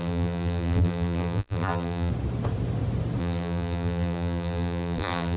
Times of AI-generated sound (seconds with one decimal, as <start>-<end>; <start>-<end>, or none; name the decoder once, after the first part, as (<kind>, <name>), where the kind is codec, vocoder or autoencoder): 0.0-2.1 (vocoder, BigVGAN v2); 3.2-5.4